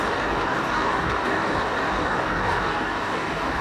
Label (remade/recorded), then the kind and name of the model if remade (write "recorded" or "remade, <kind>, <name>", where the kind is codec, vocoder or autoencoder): remade, codec, DAC